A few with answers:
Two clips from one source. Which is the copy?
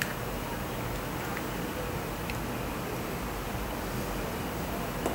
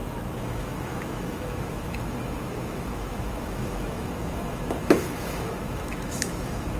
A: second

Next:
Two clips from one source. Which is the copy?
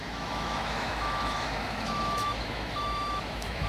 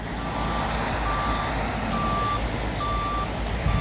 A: first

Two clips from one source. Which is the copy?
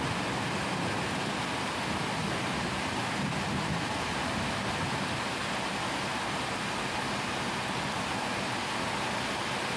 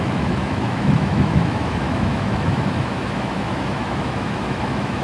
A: second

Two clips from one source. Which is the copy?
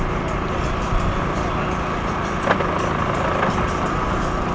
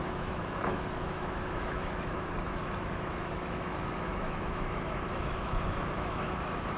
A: second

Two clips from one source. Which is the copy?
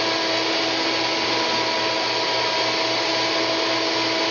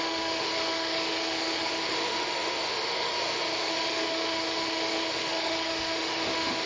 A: second